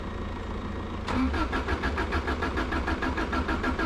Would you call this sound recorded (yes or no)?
yes